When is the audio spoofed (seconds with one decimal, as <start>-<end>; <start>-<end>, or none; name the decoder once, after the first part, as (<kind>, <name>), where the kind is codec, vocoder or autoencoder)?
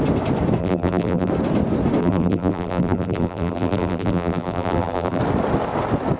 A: 0.6-1.3 (vocoder, BigVGAN v2); 2.0-5.2